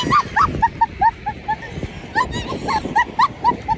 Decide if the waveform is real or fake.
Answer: real